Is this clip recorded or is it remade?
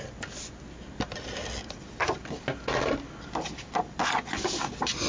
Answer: recorded